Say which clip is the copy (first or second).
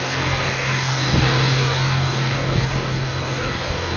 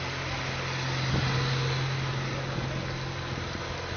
first